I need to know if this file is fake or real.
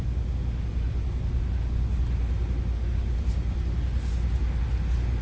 real